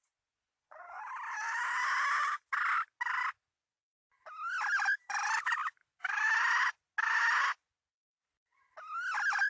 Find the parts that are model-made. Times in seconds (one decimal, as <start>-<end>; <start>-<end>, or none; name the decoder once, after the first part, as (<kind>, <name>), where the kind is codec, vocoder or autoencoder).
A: 0.0-1.1 (vocoder, Vocos)